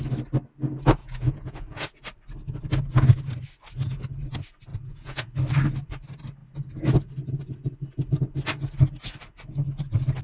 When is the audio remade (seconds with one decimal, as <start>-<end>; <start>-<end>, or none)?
1.0-1.9; 4.7-5.3